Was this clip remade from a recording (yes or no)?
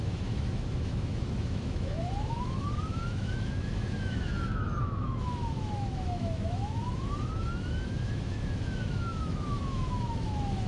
yes